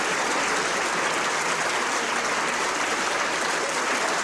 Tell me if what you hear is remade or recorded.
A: recorded